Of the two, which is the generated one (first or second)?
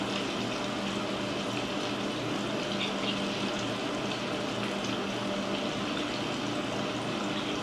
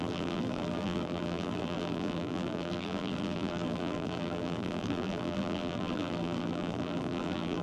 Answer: second